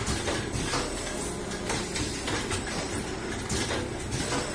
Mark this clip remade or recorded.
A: recorded